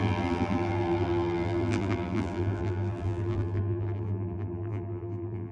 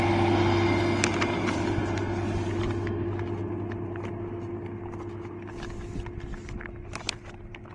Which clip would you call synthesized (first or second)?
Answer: first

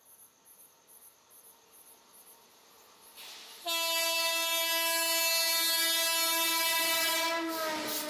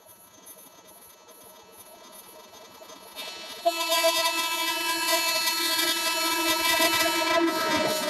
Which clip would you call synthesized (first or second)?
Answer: second